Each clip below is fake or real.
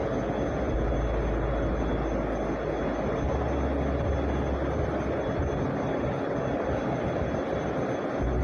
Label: real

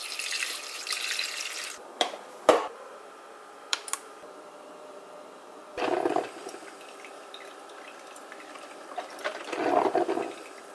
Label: fake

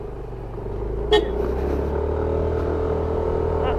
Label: real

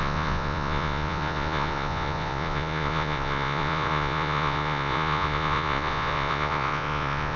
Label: fake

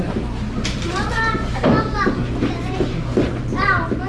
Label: real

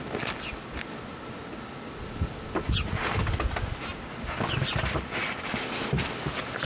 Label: real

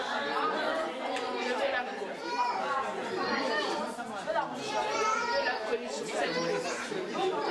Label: real